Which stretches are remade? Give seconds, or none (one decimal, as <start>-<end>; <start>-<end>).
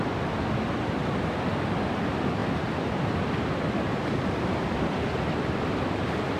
0.0-1.0; 1.8-2.4; 3.8-6.4